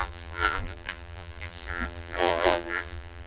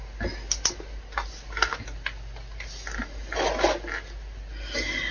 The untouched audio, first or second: second